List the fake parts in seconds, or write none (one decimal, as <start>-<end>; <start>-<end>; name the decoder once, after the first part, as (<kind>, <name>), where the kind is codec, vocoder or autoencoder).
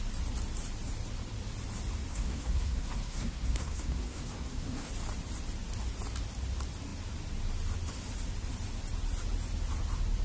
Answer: 2.1-4.9 (codec, SNAC)